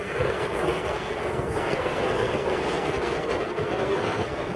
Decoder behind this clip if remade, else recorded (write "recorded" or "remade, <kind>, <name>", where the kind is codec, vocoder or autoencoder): remade, codec, SNAC